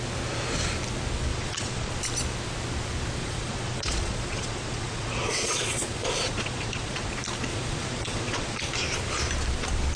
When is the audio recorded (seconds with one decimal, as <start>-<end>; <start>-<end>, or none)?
0.0-1.3; 1.9-3.2; 7.1-7.5; 8.6-10.0